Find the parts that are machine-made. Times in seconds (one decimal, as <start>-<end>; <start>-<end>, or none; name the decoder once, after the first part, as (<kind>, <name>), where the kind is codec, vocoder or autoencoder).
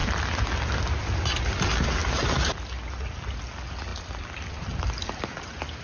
none